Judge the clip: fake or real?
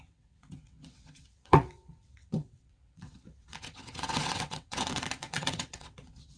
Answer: fake